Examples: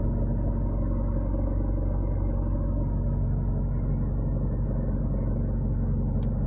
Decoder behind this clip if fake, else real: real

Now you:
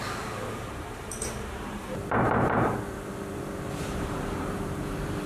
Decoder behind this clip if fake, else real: fake, vocoder, BigVGAN v2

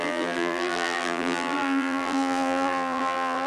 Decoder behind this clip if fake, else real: fake, vocoder, BigVGAN v2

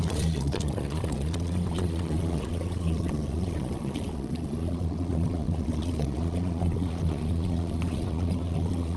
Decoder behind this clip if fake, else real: fake, vocoder, Vocos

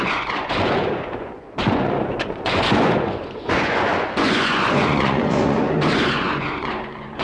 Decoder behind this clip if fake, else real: fake, vocoder, Vocos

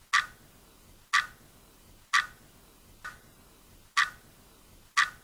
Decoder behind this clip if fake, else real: real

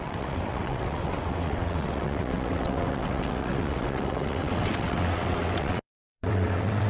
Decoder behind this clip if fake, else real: fake, vocoder, WaveNeXt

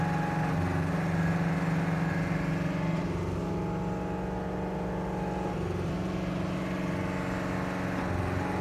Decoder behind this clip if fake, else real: real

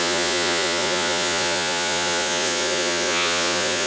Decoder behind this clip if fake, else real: fake, vocoder, Vocos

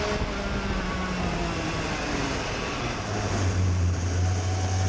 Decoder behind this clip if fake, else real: real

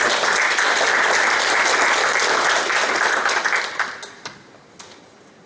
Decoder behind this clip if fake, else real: real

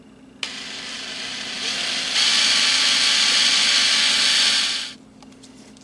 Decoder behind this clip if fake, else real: real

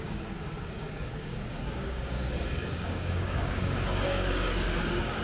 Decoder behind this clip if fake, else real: fake, codec, DAC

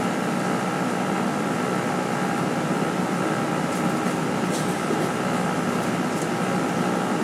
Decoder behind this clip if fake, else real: real